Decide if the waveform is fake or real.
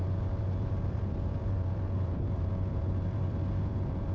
fake